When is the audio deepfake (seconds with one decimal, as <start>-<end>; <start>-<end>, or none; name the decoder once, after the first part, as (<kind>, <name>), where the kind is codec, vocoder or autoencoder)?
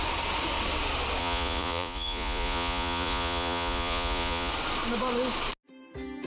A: 1.2-4.5 (vocoder, Vocos)